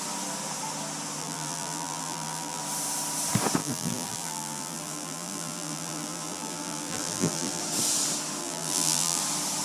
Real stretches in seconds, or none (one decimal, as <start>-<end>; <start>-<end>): 0.0-1.2; 2.6-3.6; 7.6-8.4; 9.2-9.6